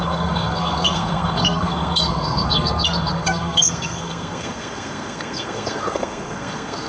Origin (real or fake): fake